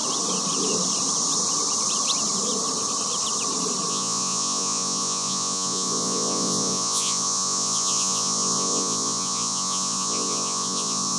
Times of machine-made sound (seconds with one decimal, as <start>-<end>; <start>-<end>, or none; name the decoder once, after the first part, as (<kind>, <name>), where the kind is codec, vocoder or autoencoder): 3.9-11.2 (vocoder, Vocos)